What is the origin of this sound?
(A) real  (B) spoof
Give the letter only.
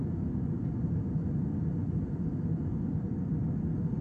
A